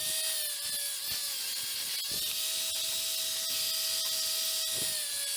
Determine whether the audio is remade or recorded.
recorded